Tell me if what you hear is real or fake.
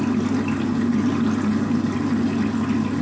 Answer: real